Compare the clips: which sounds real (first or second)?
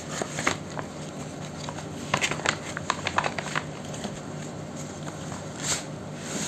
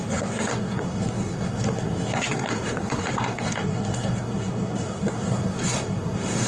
first